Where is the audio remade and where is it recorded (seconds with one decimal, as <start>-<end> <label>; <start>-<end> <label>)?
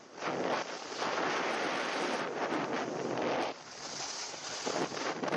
0.0-5.4 recorded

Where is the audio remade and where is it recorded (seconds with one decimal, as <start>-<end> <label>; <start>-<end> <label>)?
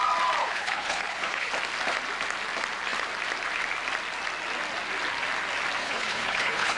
0.0-0.4 recorded; 0.4-1.5 remade; 1.5-5.8 recorded; 5.8-6.8 remade